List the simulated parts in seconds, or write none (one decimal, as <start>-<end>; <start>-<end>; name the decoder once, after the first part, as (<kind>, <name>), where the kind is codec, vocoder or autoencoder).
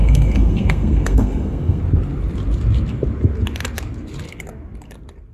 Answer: 0.0-1.8 (codec, SNAC)